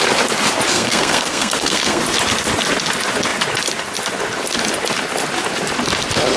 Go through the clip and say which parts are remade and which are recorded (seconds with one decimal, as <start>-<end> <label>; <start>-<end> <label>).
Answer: 0.0-0.7 recorded; 0.7-2.0 remade; 2.0-6.4 recorded